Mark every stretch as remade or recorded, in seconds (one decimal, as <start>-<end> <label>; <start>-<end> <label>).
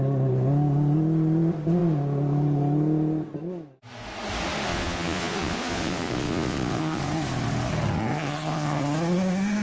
0.0-4.7 recorded; 4.7-7.0 remade; 7.0-8.1 recorded; 8.1-8.8 remade; 8.8-9.6 recorded